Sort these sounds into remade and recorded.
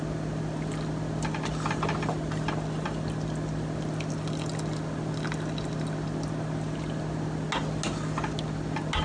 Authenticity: recorded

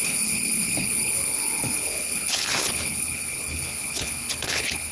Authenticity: remade